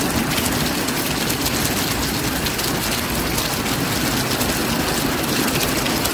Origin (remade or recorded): recorded